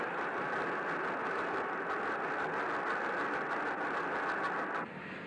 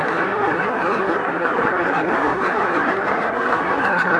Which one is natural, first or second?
first